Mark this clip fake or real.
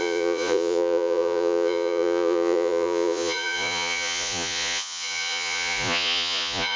fake